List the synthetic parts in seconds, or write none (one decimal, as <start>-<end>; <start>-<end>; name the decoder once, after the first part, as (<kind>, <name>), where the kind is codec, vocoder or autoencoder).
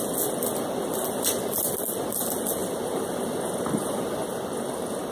none